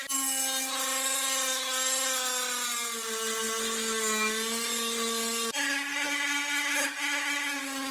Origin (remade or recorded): recorded